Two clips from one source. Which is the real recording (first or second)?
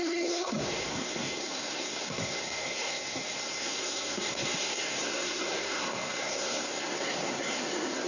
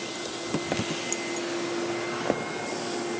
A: second